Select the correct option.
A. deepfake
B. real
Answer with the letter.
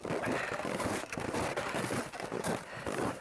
B